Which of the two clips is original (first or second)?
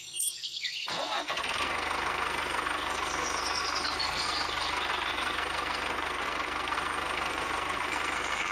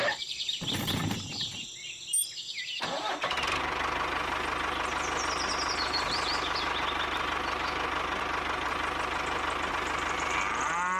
second